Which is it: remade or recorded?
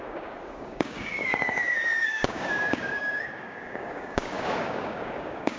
remade